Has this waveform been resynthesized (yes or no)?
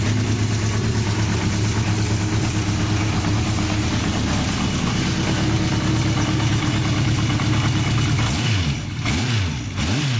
no